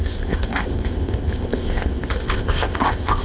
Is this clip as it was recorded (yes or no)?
no